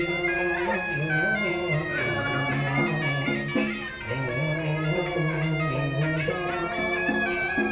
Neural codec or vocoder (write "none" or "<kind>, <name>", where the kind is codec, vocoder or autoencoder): none